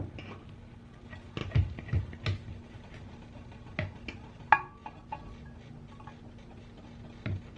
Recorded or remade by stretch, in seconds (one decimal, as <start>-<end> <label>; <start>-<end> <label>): 0.0-7.6 recorded